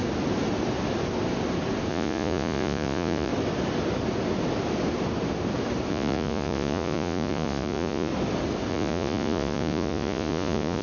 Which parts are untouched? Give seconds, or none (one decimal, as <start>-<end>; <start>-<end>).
0.0-1.9; 3.3-5.9; 8.1-8.7